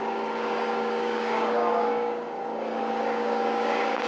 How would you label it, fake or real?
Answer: fake